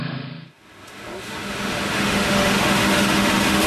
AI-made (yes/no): yes